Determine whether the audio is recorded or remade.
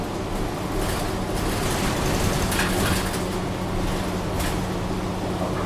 recorded